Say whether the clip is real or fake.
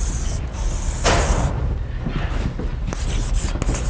real